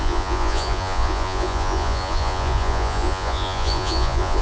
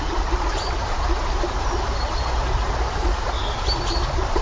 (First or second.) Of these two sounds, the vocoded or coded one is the first